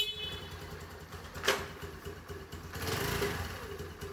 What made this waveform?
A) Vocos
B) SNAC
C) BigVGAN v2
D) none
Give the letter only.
D